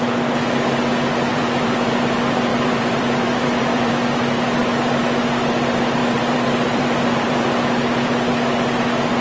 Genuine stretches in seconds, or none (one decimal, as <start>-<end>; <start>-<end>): 0.0-1.3; 1.9-2.5; 3.9-6.0; 7.4-9.2